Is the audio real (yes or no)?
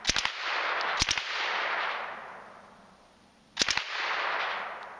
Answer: yes